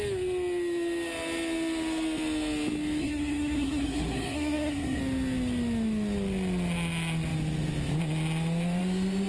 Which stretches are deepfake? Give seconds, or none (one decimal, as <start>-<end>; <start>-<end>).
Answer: 3.0-5.0